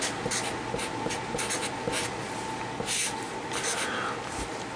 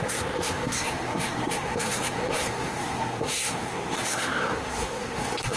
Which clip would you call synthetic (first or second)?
second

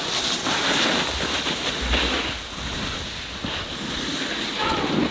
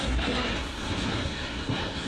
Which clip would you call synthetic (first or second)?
second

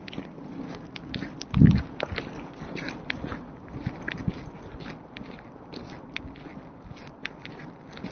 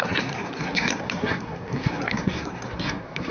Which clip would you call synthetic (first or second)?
second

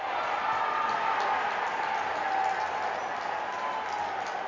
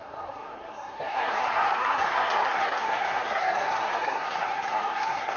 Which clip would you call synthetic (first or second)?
second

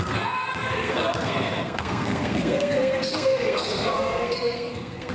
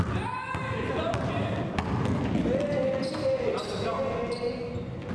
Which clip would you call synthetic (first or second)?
first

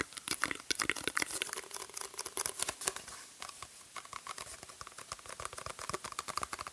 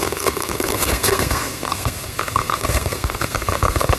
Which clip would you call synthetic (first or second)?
second